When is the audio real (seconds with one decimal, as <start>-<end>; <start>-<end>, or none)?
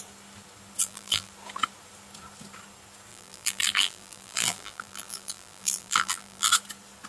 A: 0.0-0.8; 1.3-3.1; 6.5-7.1